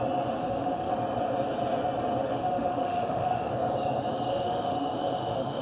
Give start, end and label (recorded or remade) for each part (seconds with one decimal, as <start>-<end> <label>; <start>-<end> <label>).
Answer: 0.0-0.4 recorded; 0.4-0.9 remade; 0.9-2.4 recorded; 2.4-3.5 remade; 3.5-4.3 recorded; 4.3-5.6 remade